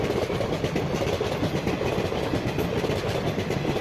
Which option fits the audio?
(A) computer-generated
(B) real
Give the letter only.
B